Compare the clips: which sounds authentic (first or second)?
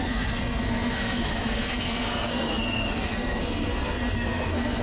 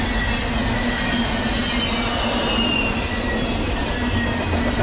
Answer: second